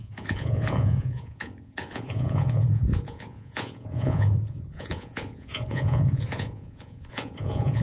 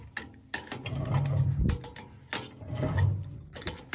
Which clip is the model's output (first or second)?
first